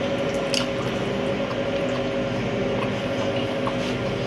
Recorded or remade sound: recorded